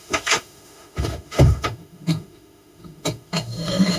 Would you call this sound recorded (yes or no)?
no